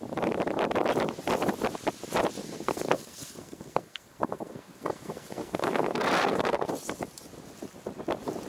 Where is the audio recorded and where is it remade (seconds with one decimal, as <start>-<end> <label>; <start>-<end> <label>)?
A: 0.0-2.4 recorded; 2.4-6.7 remade; 6.7-8.5 recorded